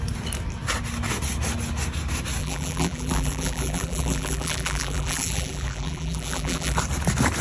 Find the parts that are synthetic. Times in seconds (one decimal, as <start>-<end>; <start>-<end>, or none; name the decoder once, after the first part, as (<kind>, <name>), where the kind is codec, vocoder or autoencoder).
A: 2.4-6.8 (vocoder, BigVGAN v2)